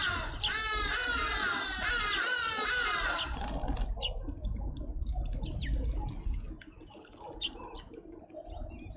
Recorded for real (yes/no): yes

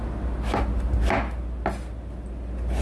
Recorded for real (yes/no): yes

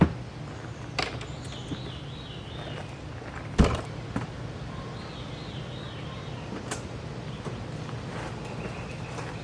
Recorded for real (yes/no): yes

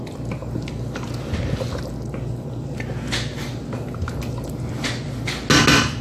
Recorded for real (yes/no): yes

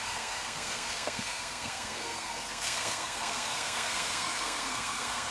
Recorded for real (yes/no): no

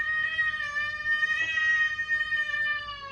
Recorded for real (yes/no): yes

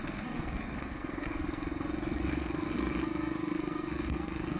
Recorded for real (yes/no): no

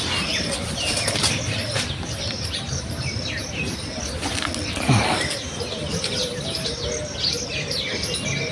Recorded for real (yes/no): yes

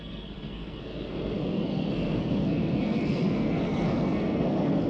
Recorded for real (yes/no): no